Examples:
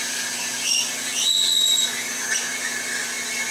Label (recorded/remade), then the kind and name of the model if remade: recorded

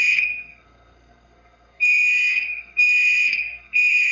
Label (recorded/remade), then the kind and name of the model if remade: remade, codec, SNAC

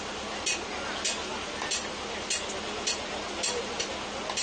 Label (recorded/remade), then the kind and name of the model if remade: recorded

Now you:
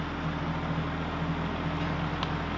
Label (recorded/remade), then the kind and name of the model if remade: recorded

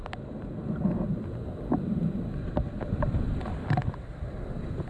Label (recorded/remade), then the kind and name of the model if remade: recorded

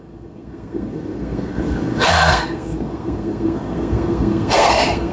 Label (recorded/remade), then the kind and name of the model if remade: remade, codec, SNAC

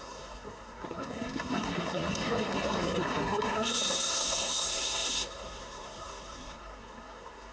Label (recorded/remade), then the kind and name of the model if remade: remade, codec, SNAC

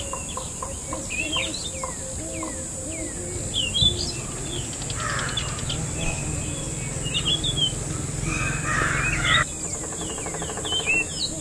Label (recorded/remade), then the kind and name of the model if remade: recorded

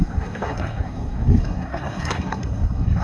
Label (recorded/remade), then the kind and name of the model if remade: remade, codec, SNAC